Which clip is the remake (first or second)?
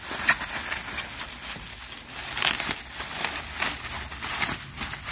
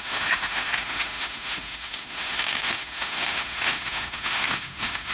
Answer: second